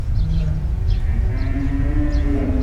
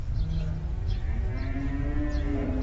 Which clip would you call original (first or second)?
second